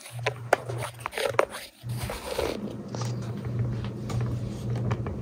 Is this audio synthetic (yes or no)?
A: no